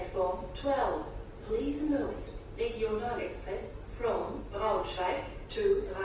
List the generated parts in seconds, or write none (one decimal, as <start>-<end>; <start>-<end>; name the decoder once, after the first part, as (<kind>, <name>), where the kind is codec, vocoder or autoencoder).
none